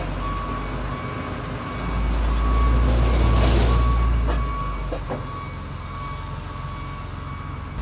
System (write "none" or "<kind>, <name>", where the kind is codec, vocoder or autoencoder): none